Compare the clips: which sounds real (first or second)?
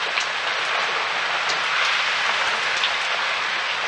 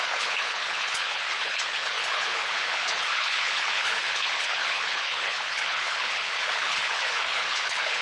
first